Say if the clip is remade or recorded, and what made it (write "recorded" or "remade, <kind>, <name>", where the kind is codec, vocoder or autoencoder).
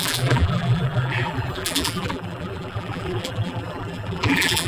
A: remade, vocoder, BigVGAN v2